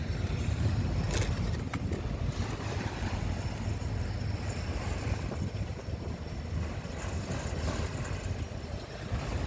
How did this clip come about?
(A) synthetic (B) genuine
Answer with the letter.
B